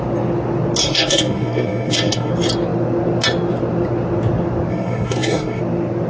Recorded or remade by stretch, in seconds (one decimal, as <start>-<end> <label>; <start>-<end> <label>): 0.0-0.8 recorded; 0.8-2.3 remade; 2.3-4.7 recorded; 4.7-5.6 remade; 5.6-6.1 recorded